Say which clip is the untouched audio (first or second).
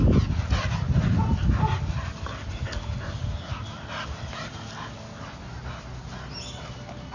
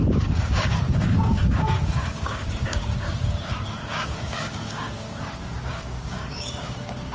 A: first